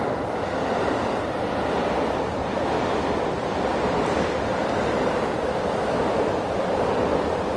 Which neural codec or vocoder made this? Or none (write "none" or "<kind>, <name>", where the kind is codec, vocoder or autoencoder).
vocoder, BigVGAN v2